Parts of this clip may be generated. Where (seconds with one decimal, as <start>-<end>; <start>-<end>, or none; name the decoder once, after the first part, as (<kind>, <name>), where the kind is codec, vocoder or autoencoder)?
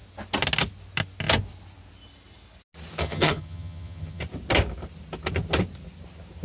3.0-4.2 (vocoder, HiFi-GAN)